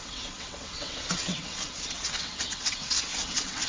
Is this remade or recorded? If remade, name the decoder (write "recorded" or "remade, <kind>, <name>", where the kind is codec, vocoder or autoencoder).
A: remade, vocoder, WaveNeXt